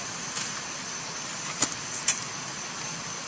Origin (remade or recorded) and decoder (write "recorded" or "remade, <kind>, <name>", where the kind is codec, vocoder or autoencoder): recorded